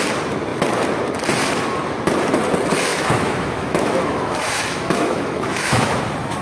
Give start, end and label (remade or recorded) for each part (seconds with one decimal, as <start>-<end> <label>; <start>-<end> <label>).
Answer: 0.0-2.9 recorded; 2.9-6.0 remade; 6.0-6.4 recorded

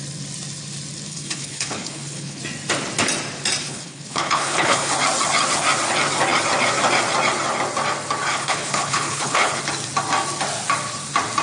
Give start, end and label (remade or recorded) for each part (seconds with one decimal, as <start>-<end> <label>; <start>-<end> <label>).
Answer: 0.0-1.1 recorded; 1.1-2.4 remade; 2.4-3.6 recorded; 3.6-4.9 remade; 4.9-8.3 recorded; 8.3-9.6 remade; 9.6-11.4 recorded

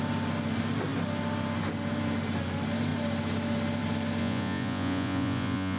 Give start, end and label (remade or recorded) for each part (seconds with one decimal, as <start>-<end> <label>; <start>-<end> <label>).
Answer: 0.0-4.2 recorded; 4.2-5.8 remade